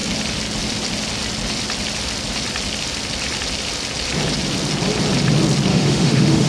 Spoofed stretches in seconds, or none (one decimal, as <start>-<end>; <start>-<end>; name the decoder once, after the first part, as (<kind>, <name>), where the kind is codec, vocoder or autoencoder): 5.7-6.5 (autoencoder, DAC-VAE)